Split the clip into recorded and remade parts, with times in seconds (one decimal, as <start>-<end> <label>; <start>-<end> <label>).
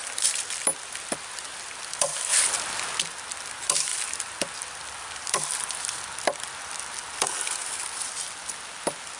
0.0-9.2 recorded